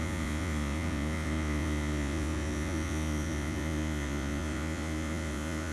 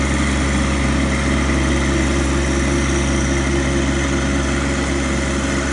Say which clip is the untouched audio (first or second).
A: second